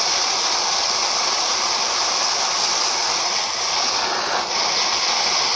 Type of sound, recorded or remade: recorded